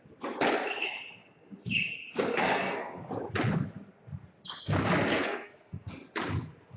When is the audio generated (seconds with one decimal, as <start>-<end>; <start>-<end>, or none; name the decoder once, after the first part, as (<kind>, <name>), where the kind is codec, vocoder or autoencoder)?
2.3-3.1 (codec, SNAC); 5.1-5.9